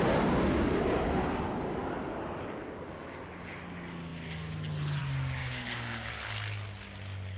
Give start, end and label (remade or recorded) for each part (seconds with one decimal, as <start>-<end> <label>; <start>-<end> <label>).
0.0-5.4 recorded; 5.4-6.1 remade; 6.1-7.4 recorded